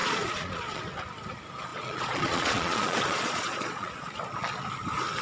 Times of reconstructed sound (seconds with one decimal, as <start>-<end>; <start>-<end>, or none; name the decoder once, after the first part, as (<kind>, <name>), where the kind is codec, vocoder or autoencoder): 0.0-0.8 (vocoder, Vocos); 1.7-4.1